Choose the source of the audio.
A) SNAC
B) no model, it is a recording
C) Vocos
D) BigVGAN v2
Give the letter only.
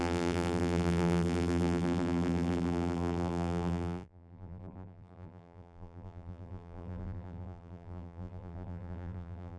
D